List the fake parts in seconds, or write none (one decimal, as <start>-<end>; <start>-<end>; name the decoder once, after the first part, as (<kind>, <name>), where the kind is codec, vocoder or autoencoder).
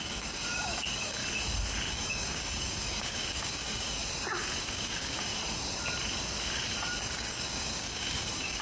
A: 0.0-1.2 (codec, DAC); 1.9-4.0; 4.6-5.3; 7.0-8.6